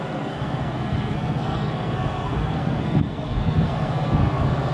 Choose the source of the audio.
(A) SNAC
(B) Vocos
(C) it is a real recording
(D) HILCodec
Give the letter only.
A